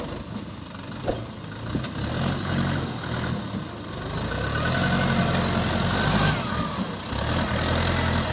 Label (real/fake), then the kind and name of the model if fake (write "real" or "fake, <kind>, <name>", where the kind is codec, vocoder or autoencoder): real